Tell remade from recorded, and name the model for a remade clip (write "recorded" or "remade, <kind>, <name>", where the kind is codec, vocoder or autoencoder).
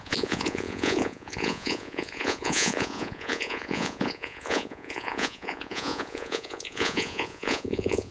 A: remade, vocoder, Vocos